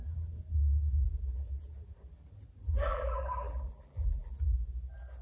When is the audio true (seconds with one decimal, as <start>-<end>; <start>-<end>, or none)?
0.0-2.9; 4.3-5.2